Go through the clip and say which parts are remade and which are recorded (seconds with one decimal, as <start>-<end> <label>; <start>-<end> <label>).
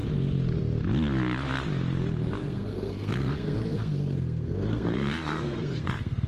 0.0-2.4 recorded; 2.4-6.3 remade